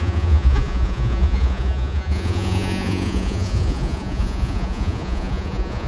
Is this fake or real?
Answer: fake